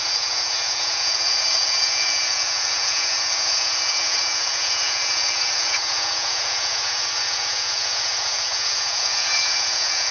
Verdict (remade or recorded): remade